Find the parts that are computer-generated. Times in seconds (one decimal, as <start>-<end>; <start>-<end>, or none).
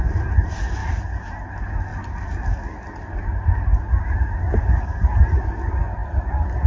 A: none